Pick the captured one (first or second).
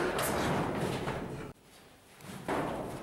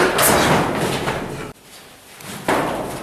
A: second